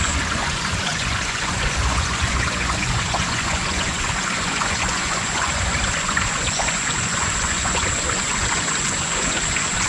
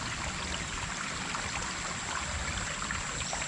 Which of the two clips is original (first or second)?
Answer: second